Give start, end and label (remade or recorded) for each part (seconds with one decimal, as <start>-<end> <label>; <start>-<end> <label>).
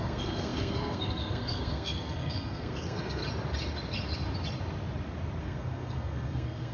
0.0-3.2 remade; 3.2-5.4 recorded; 5.4-6.7 remade